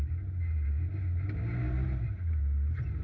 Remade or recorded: recorded